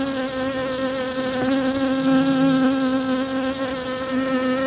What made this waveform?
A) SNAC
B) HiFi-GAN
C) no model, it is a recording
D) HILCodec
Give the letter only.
C